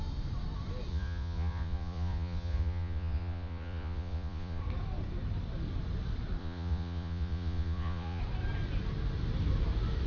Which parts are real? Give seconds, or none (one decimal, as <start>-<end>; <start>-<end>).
0.0-0.9; 4.6-6.4; 8.2-10.1